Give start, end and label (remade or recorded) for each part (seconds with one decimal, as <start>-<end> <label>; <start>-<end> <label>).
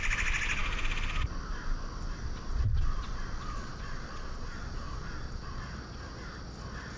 0.0-2.2 recorded; 2.2-5.6 remade; 5.6-7.0 recorded